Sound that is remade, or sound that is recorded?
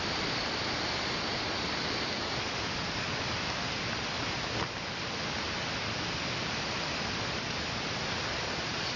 recorded